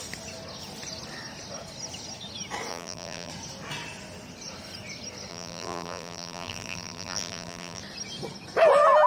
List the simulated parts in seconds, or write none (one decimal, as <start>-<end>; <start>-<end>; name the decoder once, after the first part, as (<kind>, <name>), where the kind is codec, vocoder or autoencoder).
2.7-3.3 (vocoder, BigVGAN v2); 5.3-7.8